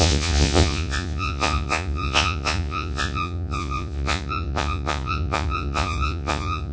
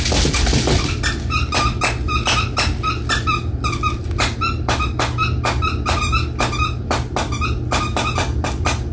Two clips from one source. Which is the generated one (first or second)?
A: first